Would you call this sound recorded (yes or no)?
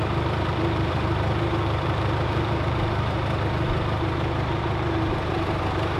no